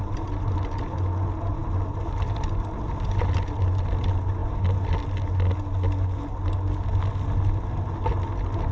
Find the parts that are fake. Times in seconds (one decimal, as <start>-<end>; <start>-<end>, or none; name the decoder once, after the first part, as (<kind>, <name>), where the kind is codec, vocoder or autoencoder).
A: none